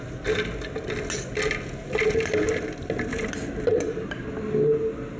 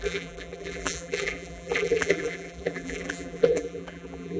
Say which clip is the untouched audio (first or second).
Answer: first